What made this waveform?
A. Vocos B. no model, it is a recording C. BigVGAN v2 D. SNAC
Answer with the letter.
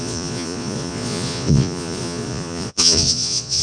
A